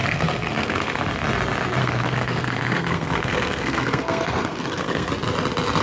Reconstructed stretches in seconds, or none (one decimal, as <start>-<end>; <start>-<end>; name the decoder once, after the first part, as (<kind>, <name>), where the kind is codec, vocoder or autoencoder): 0.0-1.0 (codec, SNAC); 1.8-5.1